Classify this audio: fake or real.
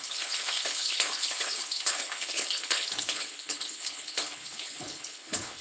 fake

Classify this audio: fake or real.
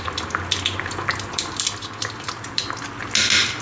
real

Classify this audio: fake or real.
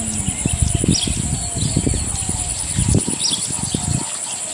real